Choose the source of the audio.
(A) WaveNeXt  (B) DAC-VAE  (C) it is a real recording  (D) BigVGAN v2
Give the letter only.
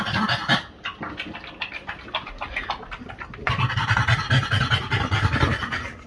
C